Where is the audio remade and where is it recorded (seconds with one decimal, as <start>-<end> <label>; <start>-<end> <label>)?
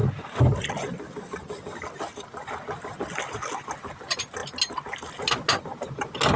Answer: 0.0-0.7 remade; 0.7-6.4 recorded